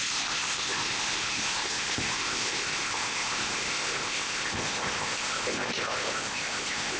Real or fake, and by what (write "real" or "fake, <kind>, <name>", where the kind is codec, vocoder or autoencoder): fake, codec, ZipCodec